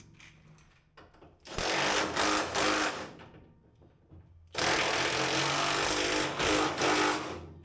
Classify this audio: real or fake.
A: real